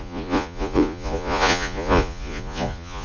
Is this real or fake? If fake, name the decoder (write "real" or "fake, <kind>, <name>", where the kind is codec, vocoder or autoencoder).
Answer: fake, vocoder, Vocos